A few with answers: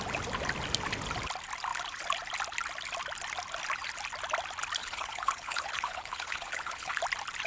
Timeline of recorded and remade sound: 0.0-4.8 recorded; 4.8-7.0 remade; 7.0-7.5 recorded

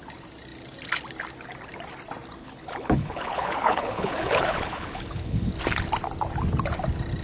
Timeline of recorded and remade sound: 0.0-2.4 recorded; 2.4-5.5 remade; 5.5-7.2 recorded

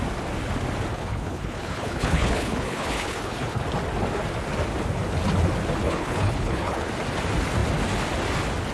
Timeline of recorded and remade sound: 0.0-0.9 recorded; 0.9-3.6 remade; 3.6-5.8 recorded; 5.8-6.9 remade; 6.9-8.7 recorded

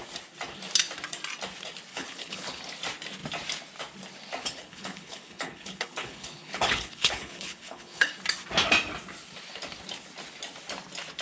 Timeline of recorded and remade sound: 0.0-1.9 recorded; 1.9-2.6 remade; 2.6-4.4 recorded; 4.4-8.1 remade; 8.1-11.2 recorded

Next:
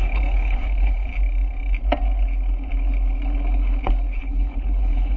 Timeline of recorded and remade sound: 0.0-1.1 remade; 1.1-4.2 recorded; 4.2-5.2 remade